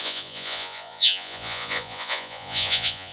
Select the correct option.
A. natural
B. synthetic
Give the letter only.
B